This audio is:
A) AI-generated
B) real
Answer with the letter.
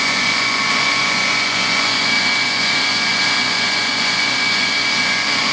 A